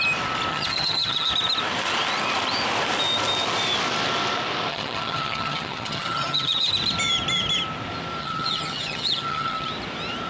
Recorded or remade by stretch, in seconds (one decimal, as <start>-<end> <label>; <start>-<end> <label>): 0.0-0.5 recorded; 0.5-1.3 remade; 1.3-4.7 recorded; 4.7-6.7 remade; 6.7-8.2 recorded; 8.2-9.7 remade; 9.7-10.3 recorded